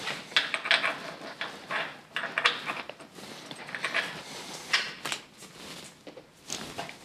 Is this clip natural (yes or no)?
yes